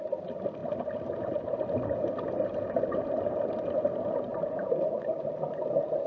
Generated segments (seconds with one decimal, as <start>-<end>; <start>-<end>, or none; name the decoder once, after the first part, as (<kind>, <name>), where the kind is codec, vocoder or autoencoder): 4.3-5.2 (vocoder, BigVGAN v2)